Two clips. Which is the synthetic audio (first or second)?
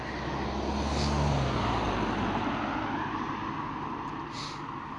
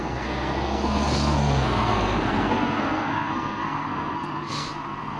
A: second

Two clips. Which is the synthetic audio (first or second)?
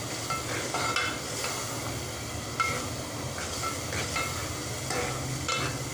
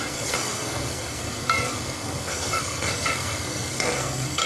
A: second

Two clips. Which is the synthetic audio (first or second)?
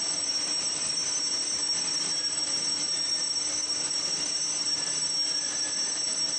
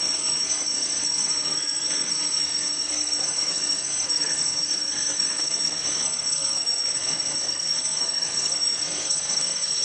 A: second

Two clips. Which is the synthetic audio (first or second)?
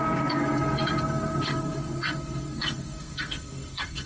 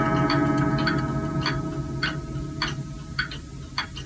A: first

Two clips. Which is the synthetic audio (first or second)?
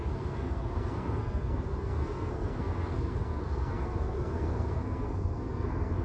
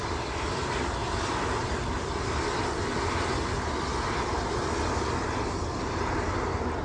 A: first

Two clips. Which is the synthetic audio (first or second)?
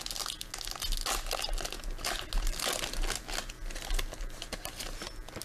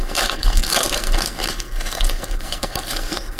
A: second